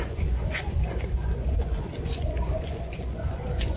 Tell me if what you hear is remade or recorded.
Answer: remade